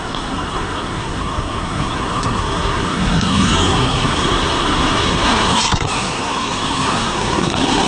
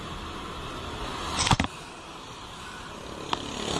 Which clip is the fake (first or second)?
first